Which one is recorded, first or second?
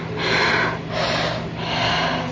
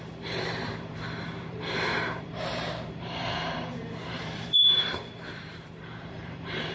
first